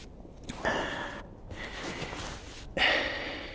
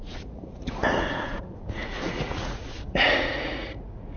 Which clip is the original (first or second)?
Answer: first